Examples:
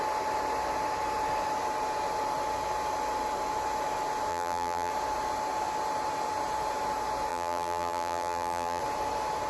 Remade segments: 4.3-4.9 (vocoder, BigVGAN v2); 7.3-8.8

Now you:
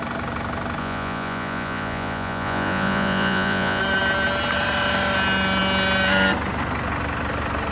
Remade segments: 0.8-3.8 (vocoder, Vocos)

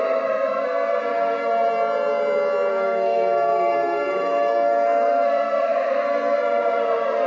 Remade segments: 0.0-1.4 (codec, SNAC); 2.7-7.3

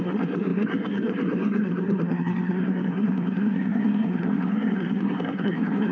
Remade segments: 0.0-5.9 (codec, SNAC)

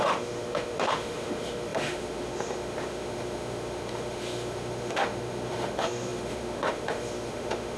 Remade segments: 0.0-7.8 (autoencoder, DAC-VAE)

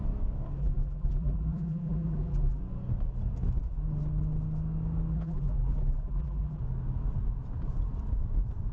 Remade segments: 0.6-2.6 (vocoder, BigVGAN v2); 5.1-6.6

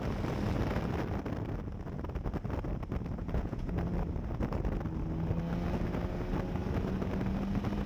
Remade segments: 3.2-3.8 (vocoder, Vocos)

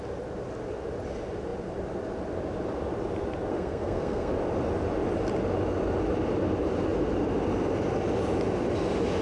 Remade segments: 3.5-4.3 (codec, SNAC)